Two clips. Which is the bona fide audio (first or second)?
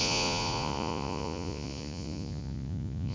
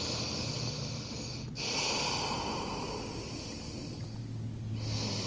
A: second